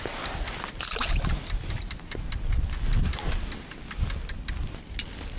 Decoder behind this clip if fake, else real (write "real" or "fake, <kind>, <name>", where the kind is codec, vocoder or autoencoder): real